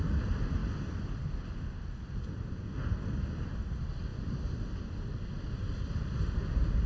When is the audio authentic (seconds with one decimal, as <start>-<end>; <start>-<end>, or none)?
0.0-6.9